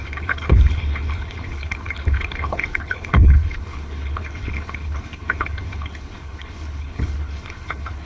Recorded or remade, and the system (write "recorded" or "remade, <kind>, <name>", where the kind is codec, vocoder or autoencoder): remade, codec, HILCodec